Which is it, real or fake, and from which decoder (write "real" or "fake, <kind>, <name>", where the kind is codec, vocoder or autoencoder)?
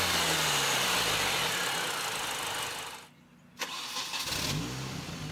real